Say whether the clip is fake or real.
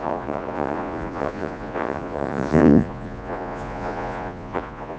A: fake